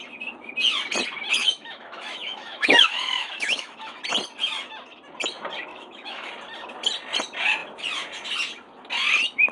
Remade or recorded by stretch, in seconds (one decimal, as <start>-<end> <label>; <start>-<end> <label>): 0.0-1.4 recorded; 1.4-4.0 remade; 4.0-5.7 recorded; 5.7-6.3 remade; 6.3-9.5 recorded